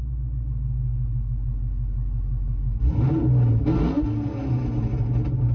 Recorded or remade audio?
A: recorded